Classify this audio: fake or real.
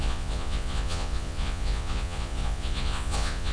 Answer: fake